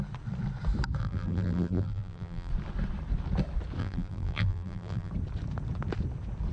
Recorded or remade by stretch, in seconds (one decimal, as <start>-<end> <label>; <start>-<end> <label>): 0.0-1.0 recorded; 1.0-2.5 remade; 2.5-3.8 recorded; 3.8-5.1 remade; 5.1-6.5 recorded